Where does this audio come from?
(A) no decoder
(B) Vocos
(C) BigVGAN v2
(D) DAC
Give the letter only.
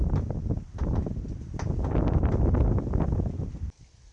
A